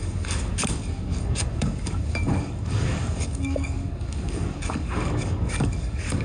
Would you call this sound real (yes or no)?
no